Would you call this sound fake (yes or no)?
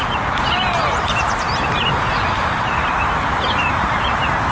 yes